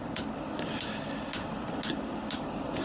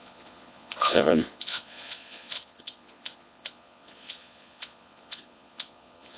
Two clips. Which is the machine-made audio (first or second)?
second